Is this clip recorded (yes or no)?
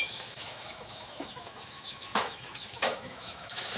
no